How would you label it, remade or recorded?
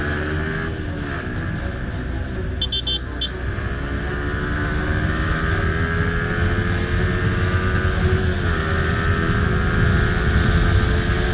recorded